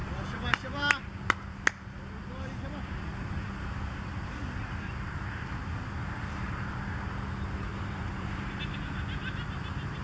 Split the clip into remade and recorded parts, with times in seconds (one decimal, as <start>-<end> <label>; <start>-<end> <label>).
0.0-6.0 recorded; 6.0-6.7 remade; 6.7-7.7 recorded; 7.7-8.6 remade; 8.6-10.0 recorded

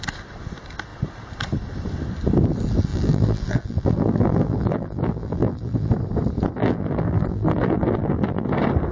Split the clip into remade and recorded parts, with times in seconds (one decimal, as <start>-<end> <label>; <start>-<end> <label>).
0.0-2.9 recorded; 2.9-5.9 remade; 5.9-6.6 recorded; 6.6-8.5 remade; 8.5-8.9 recorded

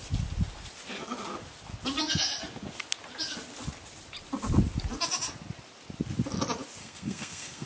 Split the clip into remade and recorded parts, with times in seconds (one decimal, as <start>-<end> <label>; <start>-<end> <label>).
0.0-6.8 recorded; 6.8-7.7 remade

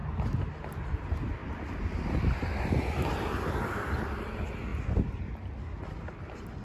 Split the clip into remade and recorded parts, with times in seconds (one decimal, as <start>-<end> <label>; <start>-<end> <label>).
0.0-6.6 recorded

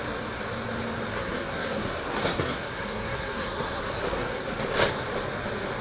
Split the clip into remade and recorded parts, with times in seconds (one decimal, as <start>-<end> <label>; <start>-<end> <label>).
0.0-1.1 recorded; 1.1-4.6 remade; 4.6-5.8 recorded

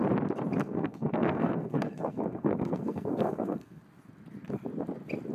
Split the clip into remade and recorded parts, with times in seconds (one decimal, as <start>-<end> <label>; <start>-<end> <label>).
0.0-0.6 recorded; 0.6-3.8 remade; 3.8-5.3 recorded

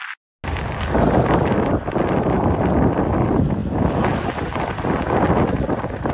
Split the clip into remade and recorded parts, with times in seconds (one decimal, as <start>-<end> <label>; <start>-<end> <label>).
0.0-6.1 recorded

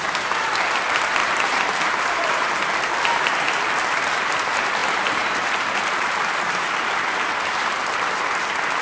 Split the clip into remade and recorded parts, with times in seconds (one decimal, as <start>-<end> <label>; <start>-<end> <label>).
0.0-1.2 recorded; 1.2-2.5 remade; 2.5-8.8 recorded